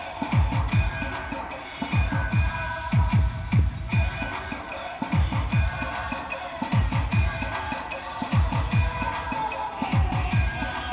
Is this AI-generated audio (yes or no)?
yes